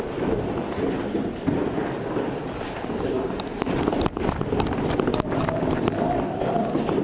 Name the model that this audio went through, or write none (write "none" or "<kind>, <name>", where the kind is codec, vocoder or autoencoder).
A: vocoder, BigVGAN v2